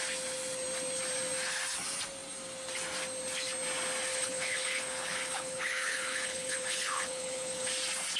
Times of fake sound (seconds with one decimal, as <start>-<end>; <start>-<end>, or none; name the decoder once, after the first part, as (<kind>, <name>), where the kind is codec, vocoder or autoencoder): 4.1-7.7 (codec, HILCodec)